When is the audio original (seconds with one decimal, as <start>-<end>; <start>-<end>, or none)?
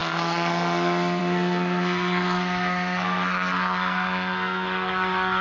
none